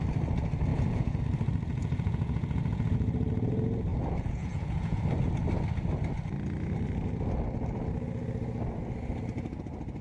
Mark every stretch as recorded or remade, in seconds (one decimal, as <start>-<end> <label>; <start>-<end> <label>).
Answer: 0.0-0.7 recorded; 0.7-1.2 remade; 1.2-1.7 recorded; 1.7-3.1 remade; 3.1-3.9 recorded; 3.9-5.0 remade; 5.0-10.0 recorded